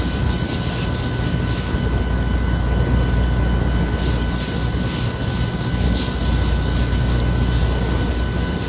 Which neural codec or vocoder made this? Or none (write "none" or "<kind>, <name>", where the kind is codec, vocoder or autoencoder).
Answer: none